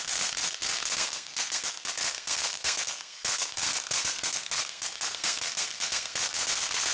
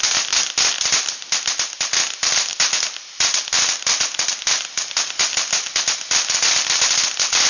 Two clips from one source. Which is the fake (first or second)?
first